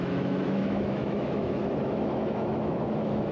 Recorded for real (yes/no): no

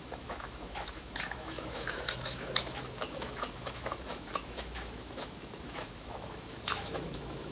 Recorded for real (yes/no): no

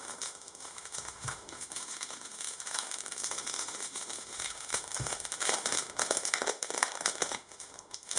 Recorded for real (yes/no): no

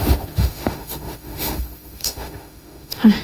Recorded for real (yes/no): no